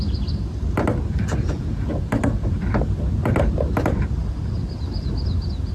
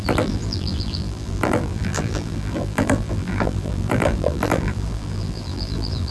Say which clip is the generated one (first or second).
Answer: second